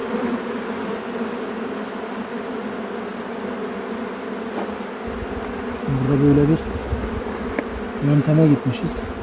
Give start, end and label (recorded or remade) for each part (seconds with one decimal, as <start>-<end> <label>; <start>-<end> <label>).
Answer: 0.0-1.0 remade; 1.0-6.8 recorded; 6.8-7.4 remade; 7.4-9.2 recorded